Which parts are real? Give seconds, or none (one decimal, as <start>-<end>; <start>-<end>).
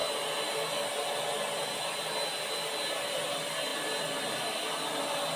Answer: 0.0-5.4